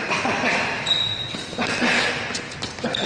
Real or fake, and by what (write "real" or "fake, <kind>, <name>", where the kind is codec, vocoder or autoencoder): real